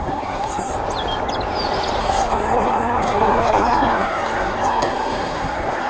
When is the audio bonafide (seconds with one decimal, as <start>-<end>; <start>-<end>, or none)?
0.7-2.0